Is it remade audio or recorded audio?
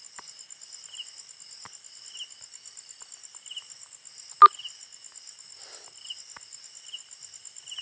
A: recorded